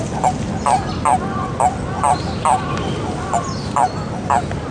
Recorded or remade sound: recorded